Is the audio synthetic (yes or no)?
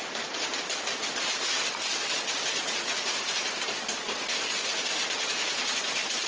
no